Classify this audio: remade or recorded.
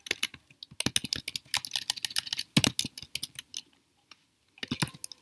recorded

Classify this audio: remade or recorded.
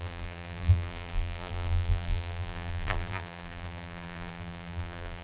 remade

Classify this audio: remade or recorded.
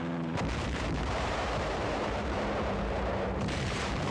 remade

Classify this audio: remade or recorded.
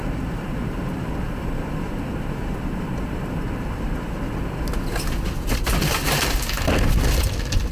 recorded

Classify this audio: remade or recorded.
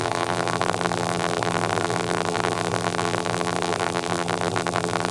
remade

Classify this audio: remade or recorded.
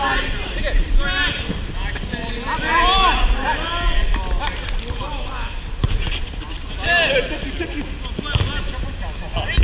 recorded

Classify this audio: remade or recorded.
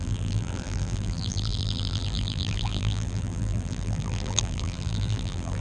remade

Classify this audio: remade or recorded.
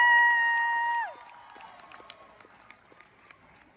recorded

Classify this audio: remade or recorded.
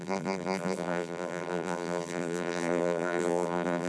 remade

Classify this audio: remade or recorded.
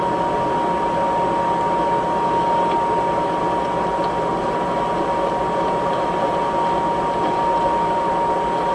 recorded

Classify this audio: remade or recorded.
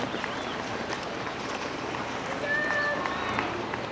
recorded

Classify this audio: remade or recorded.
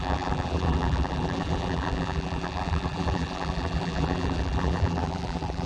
remade